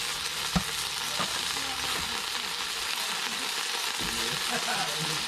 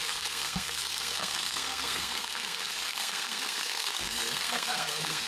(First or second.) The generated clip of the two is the second